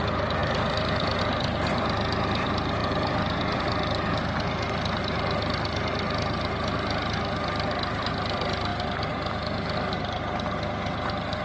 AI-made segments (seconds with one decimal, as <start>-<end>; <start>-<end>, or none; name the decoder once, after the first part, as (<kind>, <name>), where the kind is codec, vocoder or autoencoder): 0.0-8.7 (vocoder, BigVGAN v2); 9.3-11.4